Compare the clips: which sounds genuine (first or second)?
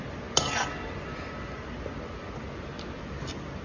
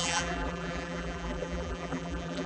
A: first